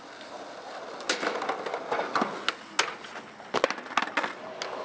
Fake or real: real